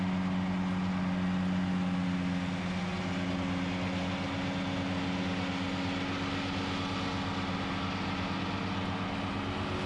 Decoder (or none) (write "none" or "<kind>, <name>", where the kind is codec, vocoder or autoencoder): none